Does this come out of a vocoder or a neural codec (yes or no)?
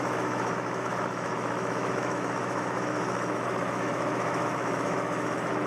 yes